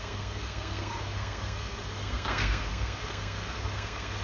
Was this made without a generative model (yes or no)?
no